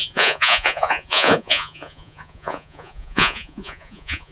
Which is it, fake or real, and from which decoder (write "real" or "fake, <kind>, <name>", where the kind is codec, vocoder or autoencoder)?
fake, vocoder, Vocos